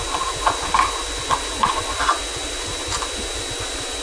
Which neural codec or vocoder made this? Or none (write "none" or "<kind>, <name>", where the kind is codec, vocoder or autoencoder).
none